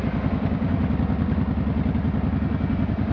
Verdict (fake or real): real